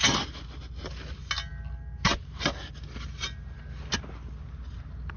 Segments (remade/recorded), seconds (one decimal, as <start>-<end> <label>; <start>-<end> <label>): 0.0-5.2 recorded